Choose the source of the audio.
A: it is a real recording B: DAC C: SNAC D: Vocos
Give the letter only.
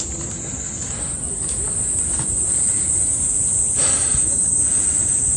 A